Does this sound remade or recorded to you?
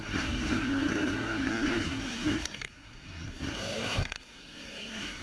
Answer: remade